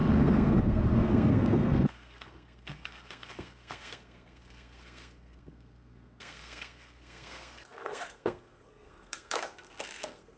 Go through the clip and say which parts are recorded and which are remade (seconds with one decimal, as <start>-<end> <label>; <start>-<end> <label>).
0.0-10.4 remade